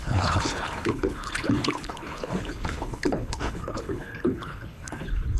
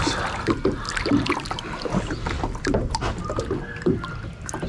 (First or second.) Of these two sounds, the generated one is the first